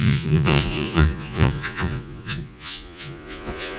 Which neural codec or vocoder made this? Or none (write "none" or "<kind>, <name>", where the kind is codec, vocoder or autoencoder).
vocoder, Vocos